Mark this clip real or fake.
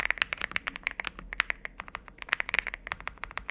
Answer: real